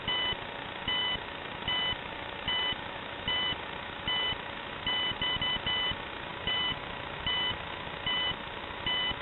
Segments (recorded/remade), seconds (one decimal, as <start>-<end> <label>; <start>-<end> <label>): 0.0-9.2 recorded